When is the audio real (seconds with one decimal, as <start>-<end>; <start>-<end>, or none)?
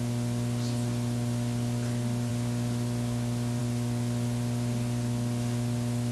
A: 0.0-6.1